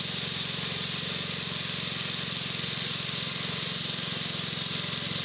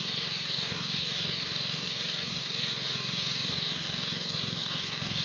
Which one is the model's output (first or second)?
second